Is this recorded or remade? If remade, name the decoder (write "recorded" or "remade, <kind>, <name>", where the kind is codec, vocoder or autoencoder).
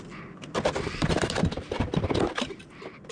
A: recorded